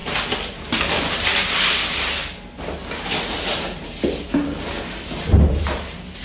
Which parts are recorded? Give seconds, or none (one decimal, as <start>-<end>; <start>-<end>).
0.0-0.5; 1.3-4.9